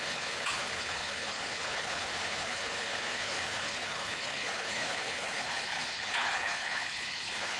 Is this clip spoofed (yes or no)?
yes